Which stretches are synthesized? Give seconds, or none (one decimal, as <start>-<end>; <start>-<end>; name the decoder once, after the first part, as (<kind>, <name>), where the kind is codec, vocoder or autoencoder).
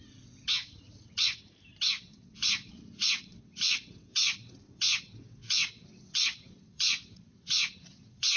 0.0-1.4 (vocoder, WaveNeXt); 2.0-8.4